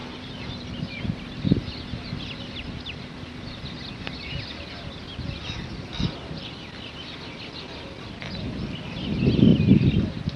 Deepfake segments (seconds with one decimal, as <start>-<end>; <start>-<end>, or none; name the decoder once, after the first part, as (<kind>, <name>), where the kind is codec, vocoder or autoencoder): 0.0-1.0 (vocoder, BigVGAN v2)